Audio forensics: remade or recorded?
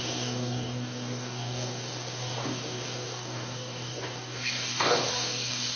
remade